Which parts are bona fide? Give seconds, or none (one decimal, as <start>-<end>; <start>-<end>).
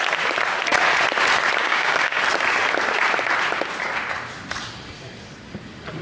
0.0-1.6; 2.2-6.0